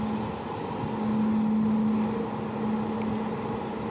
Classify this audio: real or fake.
real